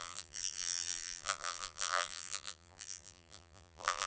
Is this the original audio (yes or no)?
no